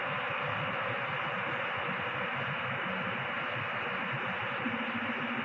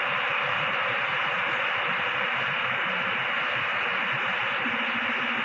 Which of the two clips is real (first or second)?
first